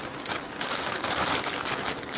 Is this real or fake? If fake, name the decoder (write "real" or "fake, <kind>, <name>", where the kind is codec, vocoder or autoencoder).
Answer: real